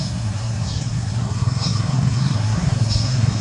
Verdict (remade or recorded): remade